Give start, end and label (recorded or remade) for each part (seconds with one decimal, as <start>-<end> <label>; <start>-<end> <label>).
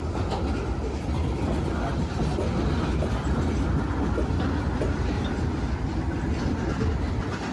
0.0-7.5 recorded